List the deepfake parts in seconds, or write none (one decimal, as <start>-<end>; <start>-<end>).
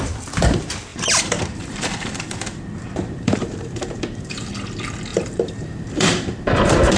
0.9-4.5; 5.1-7.0